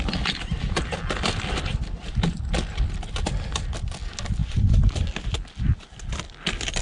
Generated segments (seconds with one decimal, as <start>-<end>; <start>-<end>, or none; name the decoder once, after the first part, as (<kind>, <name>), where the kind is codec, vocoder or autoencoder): none